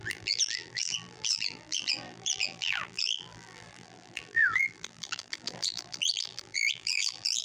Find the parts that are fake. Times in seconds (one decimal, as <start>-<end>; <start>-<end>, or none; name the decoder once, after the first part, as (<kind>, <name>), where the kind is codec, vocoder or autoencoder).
0.0-7.4 (vocoder, BigVGAN v2)

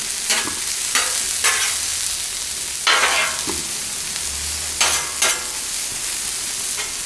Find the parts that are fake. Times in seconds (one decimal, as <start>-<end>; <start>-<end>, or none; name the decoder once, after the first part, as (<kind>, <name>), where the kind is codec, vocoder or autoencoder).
none